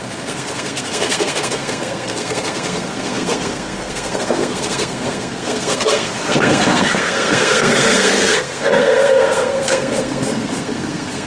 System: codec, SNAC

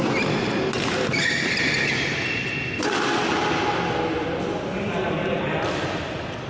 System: none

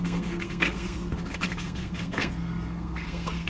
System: codec, SNAC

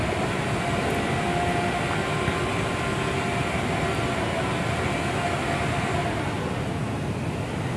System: none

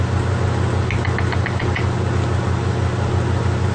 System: none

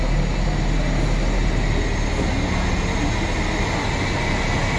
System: none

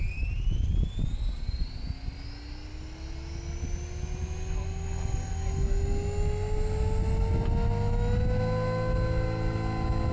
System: none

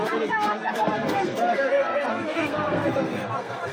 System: codec, SNAC